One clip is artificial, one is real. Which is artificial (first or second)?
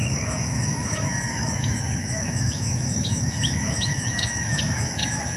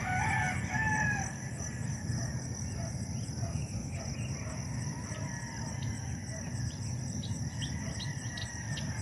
first